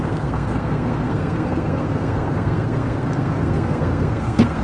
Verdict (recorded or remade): remade